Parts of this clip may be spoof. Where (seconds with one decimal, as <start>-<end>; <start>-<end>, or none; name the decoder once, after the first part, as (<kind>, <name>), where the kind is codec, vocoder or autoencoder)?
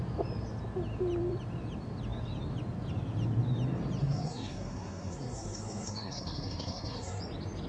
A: 4.0-7.2 (codec, SNAC)